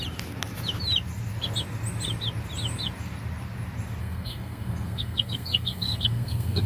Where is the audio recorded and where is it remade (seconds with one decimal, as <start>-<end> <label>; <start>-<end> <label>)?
0.0-4.0 recorded; 4.0-6.7 remade